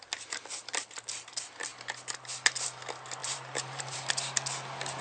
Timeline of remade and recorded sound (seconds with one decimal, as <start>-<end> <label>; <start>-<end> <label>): 0.0-3.2 recorded; 3.2-4.1 remade; 4.1-5.0 recorded